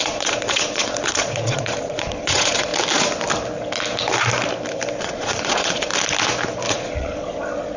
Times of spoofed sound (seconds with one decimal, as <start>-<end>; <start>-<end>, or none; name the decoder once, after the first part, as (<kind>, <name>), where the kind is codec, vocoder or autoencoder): 0.0-2.7 (vocoder, Vocos); 5.0-5.9; 6.7-7.8